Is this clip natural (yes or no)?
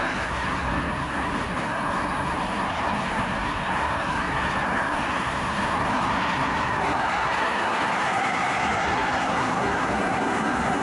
no